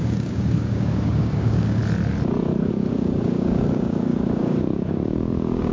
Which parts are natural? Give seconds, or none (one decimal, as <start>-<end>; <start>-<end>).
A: 1.8-2.7